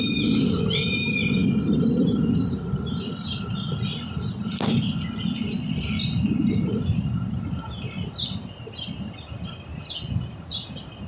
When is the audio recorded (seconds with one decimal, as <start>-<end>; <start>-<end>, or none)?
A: 0.0-11.1